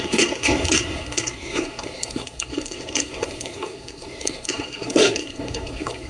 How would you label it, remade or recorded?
remade